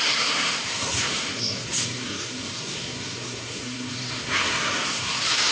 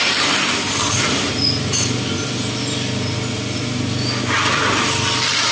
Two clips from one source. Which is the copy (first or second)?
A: first